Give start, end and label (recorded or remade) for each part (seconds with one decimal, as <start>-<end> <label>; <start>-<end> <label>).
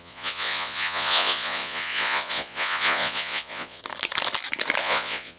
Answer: 0.0-3.8 remade; 3.8-4.8 recorded; 4.8-5.4 remade